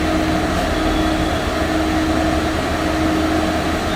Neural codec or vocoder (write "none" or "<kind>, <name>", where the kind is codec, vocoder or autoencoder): none